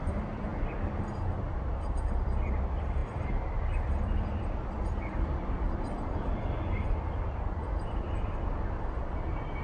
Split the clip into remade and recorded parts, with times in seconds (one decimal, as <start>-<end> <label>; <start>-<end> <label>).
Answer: 0.0-0.5 remade; 0.5-1.5 recorded; 1.5-9.6 remade